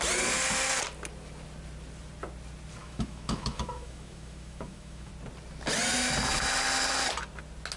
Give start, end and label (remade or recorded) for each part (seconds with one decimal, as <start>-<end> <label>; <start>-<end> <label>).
0.0-2.8 recorded; 2.8-5.1 remade; 5.1-7.8 recorded